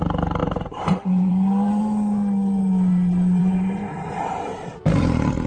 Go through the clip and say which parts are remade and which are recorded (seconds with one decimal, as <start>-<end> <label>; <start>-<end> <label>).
0.0-0.4 recorded; 0.4-1.3 remade; 1.3-3.4 recorded; 3.4-4.8 remade; 4.8-5.5 recorded